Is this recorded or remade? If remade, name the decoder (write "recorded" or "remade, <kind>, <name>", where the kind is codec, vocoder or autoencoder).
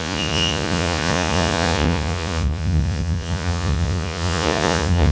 remade, vocoder, Vocos